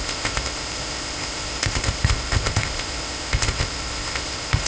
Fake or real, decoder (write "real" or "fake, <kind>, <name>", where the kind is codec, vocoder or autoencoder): fake, codec, ZipCodec